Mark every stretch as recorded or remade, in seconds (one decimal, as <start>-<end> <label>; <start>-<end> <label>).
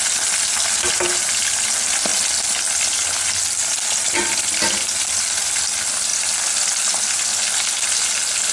0.0-8.5 recorded